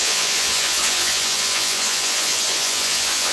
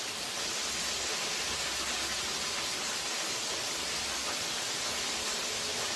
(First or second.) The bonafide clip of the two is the second